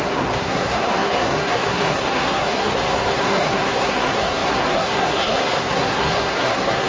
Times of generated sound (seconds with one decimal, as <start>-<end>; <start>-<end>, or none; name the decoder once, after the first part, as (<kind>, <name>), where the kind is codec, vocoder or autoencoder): 0.0-6.9 (codec, SNAC)